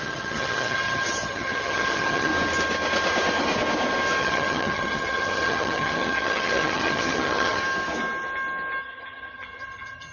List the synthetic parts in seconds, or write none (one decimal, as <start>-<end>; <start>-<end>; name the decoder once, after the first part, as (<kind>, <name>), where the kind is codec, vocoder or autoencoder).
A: 0.0-2.3 (vocoder, HiFi-GAN); 4.2-7.6; 8.8-10.1